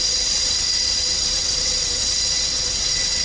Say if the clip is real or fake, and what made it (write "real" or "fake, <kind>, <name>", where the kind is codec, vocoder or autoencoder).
fake, vocoder, WaveNeXt